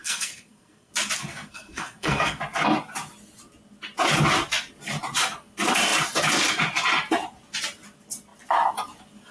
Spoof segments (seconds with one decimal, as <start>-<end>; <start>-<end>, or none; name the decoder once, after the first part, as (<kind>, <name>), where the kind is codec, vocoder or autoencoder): 0.0-0.9 (codec, SNAC); 1.3-2.4